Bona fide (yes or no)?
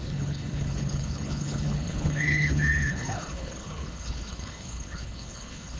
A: no